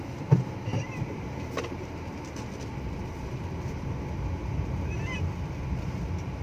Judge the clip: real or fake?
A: real